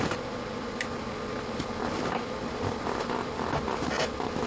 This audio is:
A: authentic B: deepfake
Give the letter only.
B